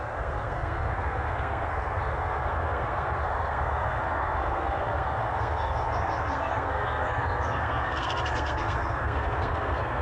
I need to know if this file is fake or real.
fake